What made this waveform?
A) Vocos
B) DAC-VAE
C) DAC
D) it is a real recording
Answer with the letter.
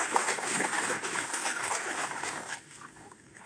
C